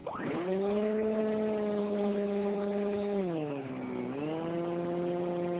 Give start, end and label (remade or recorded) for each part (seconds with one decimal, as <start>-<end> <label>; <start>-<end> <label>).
0.0-1.2 remade; 1.2-1.8 recorded; 1.8-3.7 remade; 3.7-5.6 recorded